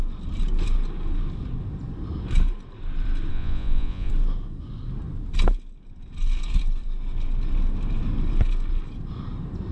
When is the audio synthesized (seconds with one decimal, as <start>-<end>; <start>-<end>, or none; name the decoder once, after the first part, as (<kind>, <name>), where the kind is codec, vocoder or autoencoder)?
3.3-4.1 (vocoder, Vocos)